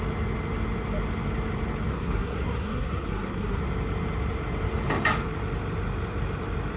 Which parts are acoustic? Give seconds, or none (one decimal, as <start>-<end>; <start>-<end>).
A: 0.0-1.9; 3.6-6.8